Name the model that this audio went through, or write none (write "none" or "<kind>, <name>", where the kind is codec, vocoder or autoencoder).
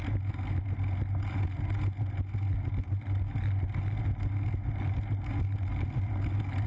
none